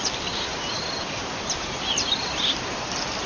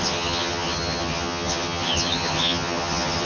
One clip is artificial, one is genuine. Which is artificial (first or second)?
second